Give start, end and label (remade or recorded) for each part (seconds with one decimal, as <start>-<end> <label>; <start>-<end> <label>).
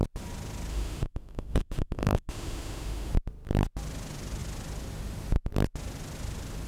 0.0-0.7 recorded; 0.7-3.1 remade; 3.1-6.7 recorded